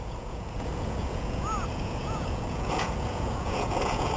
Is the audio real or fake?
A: fake